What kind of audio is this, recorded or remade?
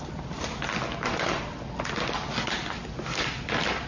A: recorded